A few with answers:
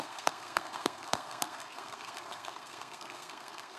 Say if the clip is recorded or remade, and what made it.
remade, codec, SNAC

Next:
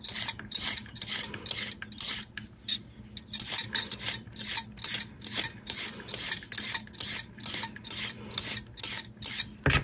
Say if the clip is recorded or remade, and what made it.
recorded